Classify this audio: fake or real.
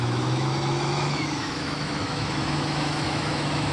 fake